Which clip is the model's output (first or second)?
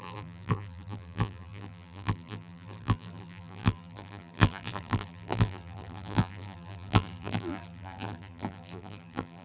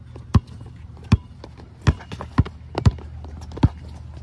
first